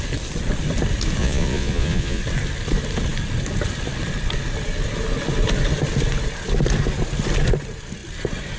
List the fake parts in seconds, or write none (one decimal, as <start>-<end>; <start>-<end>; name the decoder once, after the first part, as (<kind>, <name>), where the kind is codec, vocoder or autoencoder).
1.2-2.2 (vocoder, Vocos)